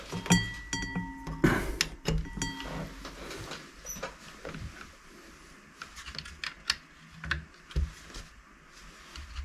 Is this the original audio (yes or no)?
yes